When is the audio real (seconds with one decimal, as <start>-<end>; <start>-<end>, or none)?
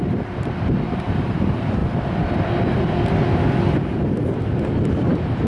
0.0-5.5